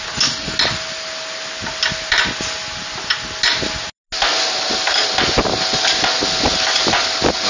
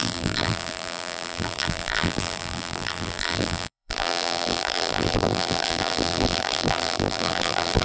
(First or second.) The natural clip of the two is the first